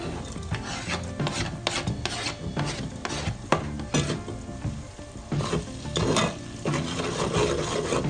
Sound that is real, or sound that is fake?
real